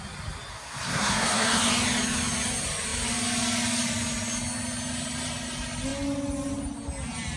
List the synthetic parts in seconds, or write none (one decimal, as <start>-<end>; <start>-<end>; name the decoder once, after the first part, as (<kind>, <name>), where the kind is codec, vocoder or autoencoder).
0.5-1.7 (codec, SNAC)

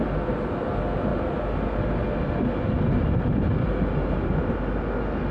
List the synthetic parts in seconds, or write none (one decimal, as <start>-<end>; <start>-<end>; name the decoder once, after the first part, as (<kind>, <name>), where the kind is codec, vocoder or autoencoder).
none